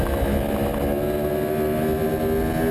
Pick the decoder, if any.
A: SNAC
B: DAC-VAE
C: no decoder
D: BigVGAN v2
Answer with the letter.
C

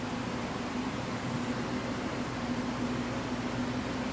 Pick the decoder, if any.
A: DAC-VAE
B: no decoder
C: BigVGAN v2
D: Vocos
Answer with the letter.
B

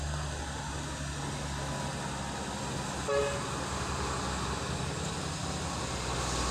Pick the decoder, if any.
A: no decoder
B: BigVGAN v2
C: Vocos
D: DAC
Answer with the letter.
A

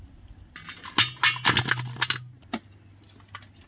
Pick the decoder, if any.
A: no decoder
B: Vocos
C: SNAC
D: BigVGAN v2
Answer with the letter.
A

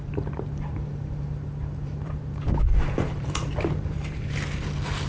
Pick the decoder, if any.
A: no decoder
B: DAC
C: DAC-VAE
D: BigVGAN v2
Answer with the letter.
D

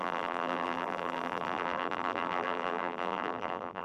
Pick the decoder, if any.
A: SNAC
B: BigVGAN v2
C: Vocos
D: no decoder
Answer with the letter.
B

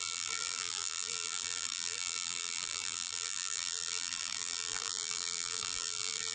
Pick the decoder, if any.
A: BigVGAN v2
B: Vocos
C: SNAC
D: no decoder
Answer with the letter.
A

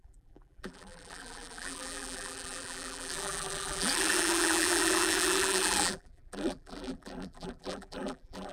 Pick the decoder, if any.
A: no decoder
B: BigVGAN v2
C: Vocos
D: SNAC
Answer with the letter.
B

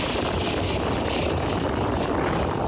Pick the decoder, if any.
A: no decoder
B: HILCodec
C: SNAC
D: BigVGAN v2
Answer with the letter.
A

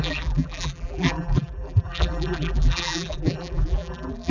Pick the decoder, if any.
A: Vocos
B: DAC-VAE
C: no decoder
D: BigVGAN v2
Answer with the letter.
D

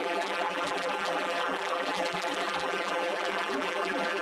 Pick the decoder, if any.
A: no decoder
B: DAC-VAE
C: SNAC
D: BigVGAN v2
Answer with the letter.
D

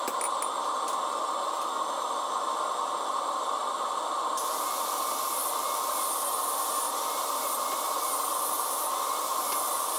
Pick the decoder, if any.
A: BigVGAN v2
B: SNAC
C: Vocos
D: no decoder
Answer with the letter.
D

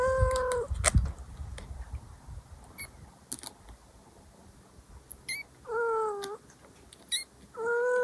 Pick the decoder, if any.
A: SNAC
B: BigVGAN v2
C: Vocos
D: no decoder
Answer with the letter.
D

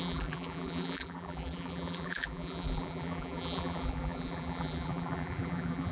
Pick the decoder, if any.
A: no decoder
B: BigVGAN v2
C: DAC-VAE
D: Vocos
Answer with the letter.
B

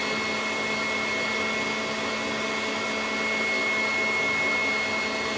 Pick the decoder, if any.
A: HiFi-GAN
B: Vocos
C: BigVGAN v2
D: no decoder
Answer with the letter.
D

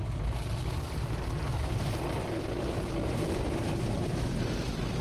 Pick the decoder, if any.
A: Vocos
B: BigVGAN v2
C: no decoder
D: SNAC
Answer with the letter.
C